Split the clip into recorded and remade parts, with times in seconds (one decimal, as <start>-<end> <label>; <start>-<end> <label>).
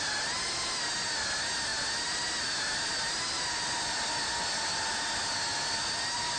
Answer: 0.0-6.4 recorded